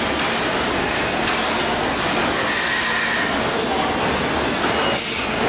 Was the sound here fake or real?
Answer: real